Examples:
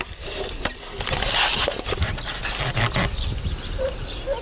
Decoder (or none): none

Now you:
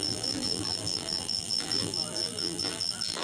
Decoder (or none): vocoder, BigVGAN v2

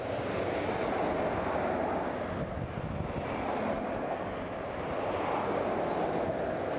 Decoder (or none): none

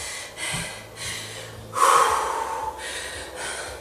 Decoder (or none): none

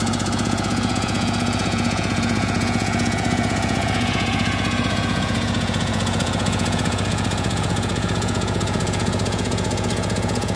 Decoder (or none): vocoder, Vocos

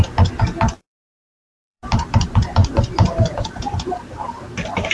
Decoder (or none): vocoder, BigVGAN v2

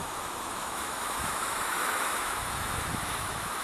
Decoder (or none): autoencoder, DAC-VAE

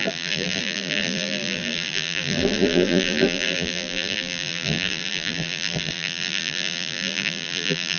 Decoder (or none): vocoder, BigVGAN v2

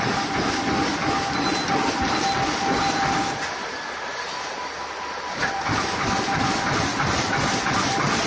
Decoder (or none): none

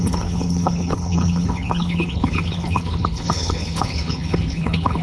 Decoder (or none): codec, HILCodec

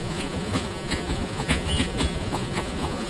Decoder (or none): vocoder, Vocos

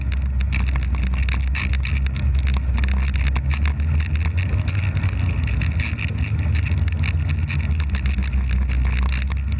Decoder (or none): none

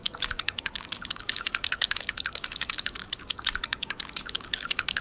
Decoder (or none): codec, DAC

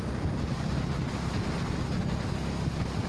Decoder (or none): none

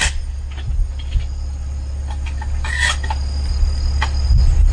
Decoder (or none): none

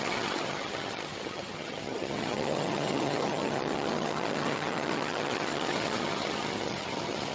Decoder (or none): vocoder, HiFi-GAN